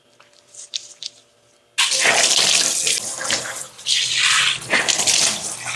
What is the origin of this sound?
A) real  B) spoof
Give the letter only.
A